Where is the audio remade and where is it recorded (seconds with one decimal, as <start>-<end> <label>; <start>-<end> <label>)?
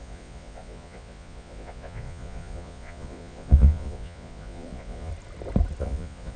0.0-5.1 remade; 5.1-5.8 recorded; 5.8-6.4 remade